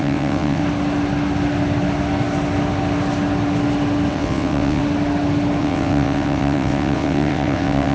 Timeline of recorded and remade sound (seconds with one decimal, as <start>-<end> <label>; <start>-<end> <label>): 0.0-0.6 remade; 0.6-4.1 recorded; 4.1-4.8 remade; 4.8-5.6 recorded; 5.6-7.9 remade